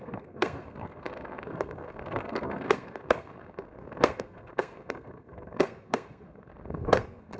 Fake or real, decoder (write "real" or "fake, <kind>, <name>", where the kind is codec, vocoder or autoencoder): fake, codec, SNAC